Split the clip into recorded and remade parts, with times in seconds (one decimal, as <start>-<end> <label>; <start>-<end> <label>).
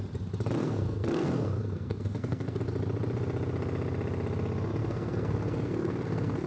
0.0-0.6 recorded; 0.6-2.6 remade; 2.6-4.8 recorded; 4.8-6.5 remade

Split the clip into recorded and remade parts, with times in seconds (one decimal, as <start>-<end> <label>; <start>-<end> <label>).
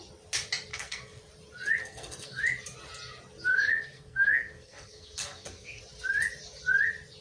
0.0-0.7 recorded; 0.7-1.2 remade; 1.2-1.8 recorded; 1.8-2.4 remade; 2.4-3.5 recorded; 3.5-5.8 remade; 5.8-7.2 recorded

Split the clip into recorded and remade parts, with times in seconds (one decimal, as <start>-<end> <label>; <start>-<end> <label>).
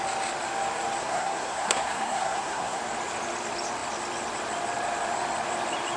0.0-1.0 recorded; 1.0-2.8 remade; 2.8-6.0 recorded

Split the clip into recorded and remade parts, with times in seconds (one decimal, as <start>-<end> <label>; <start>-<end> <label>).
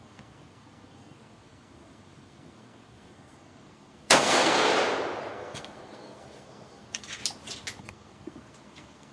0.0-4.7 remade; 4.7-5.3 recorded; 5.3-7.2 remade; 7.2-7.8 recorded; 7.8-9.1 remade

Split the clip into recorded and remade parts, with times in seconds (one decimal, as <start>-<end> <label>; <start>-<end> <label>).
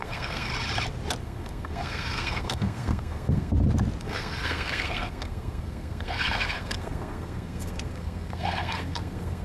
0.0-0.5 remade; 0.5-1.2 recorded; 1.2-3.5 remade; 3.5-4.0 recorded; 4.0-9.4 remade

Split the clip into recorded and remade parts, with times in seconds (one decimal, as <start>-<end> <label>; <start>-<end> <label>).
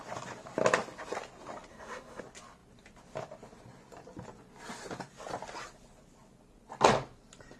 0.0-1.7 recorded; 1.7-2.2 remade; 2.2-7.6 recorded